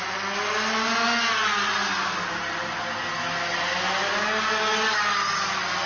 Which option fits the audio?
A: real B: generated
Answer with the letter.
A